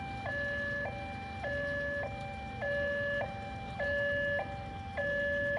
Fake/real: real